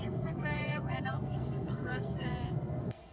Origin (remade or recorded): remade